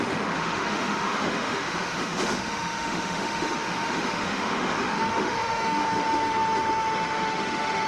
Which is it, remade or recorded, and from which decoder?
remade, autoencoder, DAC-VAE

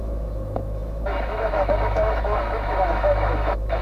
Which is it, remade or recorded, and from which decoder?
remade, autoencoder, DAC-VAE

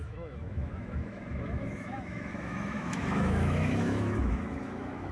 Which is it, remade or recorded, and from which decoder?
remade, autoencoder, DAC-VAE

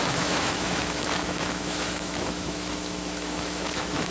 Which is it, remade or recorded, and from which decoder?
remade, autoencoder, DAC-VAE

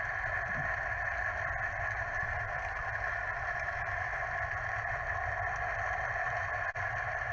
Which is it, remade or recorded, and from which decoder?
recorded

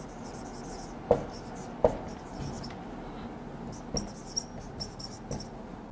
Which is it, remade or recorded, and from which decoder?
recorded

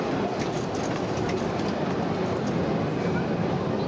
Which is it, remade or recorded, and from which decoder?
recorded